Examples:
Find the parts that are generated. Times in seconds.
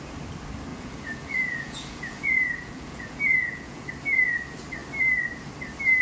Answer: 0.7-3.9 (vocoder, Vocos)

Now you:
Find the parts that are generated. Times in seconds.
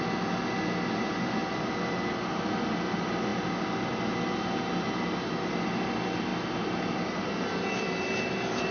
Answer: none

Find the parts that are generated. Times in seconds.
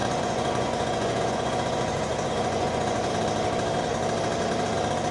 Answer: 0.0-3.1 (vocoder, Vocos)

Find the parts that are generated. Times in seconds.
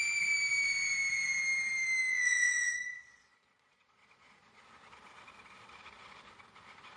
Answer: 2.1-4.6 (vocoder, Vocos)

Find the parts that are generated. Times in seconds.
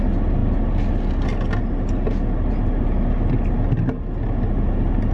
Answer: none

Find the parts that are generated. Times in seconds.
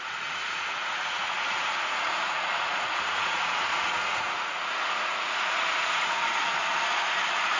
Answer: 0.0-7.6 (vocoder, Vocos)